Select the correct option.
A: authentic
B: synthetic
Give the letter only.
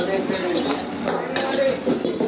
A